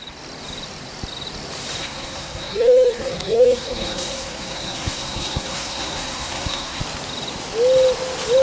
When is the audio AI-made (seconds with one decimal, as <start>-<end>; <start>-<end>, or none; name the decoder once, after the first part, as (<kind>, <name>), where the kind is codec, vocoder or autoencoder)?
1.8-6.8 (codec, SNAC)